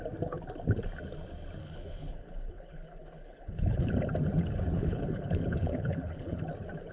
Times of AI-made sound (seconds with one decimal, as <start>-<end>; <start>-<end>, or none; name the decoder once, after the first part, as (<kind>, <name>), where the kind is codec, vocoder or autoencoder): 1.6-3.9 (codec, HILCodec); 4.7-6.4